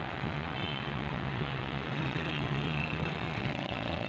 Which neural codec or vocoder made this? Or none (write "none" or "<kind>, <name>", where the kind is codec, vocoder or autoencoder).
vocoder, WaveNeXt